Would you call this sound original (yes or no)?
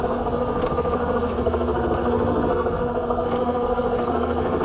no